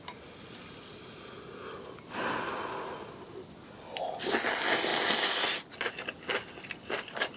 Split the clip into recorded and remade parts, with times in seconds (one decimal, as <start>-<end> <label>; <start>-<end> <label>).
0.0-7.4 recorded